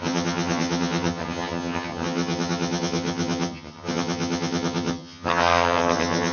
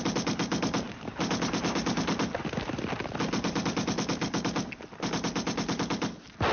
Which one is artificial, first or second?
first